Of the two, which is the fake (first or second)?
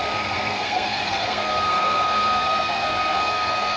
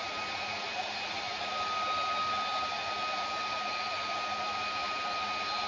first